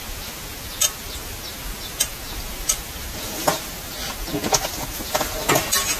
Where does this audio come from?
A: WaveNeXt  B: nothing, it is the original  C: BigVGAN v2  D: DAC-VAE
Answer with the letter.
B